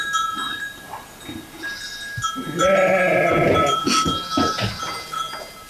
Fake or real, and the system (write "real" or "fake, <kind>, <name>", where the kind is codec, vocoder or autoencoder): real